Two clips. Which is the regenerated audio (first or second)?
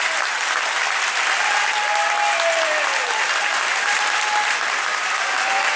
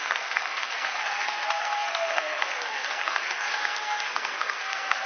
second